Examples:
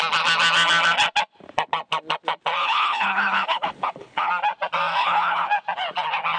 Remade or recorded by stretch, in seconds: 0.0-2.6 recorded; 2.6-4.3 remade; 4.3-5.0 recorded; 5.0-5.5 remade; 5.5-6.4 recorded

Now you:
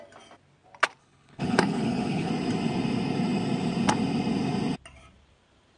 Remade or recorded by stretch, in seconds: 0.0-1.0 recorded; 1.0-2.3 remade; 2.3-5.8 recorded

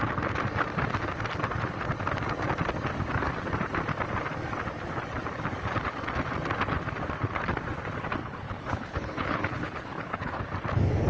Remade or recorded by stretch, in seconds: 0.0-8.2 recorded; 8.2-10.4 remade; 10.4-11.1 recorded

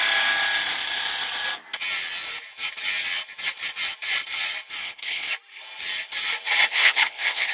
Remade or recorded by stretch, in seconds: 0.0-4.8 recorded; 4.8-5.3 remade; 5.3-6.7 recorded; 6.7-7.5 remade

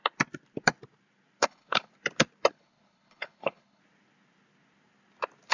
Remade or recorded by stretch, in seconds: 0.0-1.4 recorded; 1.4-1.9 remade; 1.9-2.5 recorded; 2.5-3.8 remade; 3.8-5.5 recorded

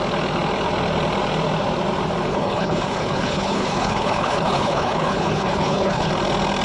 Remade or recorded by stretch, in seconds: 0.0-2.3 recorded; 2.3-6.1 remade; 6.1-6.6 recorded